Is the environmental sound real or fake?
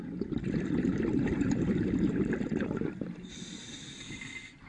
real